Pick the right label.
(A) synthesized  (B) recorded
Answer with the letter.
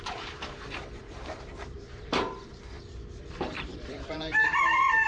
A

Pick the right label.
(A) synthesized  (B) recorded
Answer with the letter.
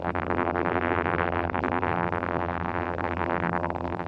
A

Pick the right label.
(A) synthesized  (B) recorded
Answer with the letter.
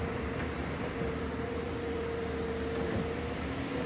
A